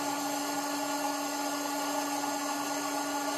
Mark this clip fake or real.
real